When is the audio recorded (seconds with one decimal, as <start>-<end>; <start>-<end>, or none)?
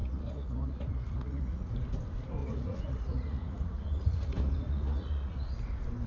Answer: 1.7-2.4; 5.5-6.1